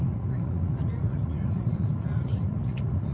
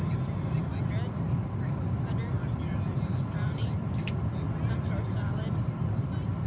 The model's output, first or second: first